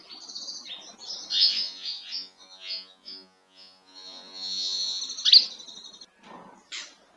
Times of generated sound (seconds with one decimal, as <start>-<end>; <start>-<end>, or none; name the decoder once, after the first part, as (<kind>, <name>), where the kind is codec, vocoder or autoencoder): 1.3-5.0 (vocoder, Vocos)